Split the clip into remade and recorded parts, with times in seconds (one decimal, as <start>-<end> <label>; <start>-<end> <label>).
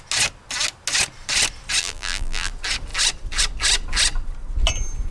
0.0-1.8 recorded; 1.8-2.5 remade; 2.5-5.1 recorded